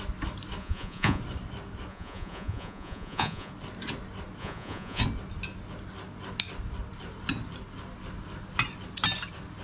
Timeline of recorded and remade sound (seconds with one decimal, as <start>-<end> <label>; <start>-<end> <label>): 0.0-0.6 recorded; 0.6-1.2 remade; 1.2-1.9 recorded; 1.9-3.5 remade; 3.5-4.4 recorded; 4.4-5.0 remade; 5.0-9.6 recorded